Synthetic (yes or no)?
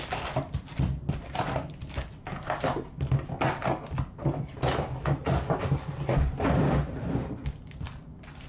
no